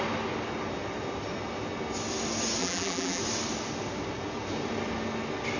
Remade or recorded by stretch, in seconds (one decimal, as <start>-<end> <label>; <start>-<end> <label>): 0.0-2.6 recorded; 2.6-3.2 remade; 3.2-5.6 recorded